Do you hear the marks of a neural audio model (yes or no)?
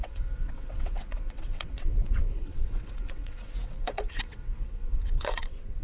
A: yes